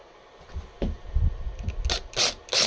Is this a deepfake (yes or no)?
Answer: no